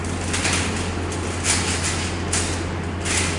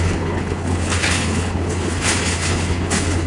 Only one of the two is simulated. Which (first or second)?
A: second